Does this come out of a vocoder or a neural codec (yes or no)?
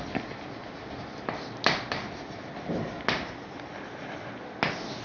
no